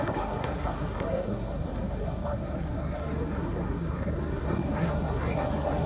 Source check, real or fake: fake